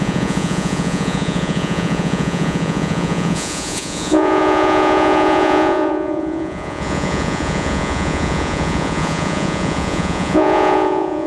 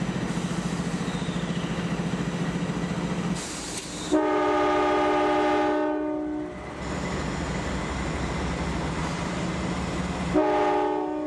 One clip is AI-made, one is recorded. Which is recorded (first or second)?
second